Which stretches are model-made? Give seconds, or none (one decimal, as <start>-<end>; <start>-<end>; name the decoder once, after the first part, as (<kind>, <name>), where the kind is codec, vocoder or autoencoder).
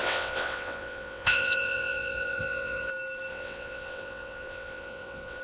0.0-2.9 (vocoder, WaveNeXt); 3.3-5.4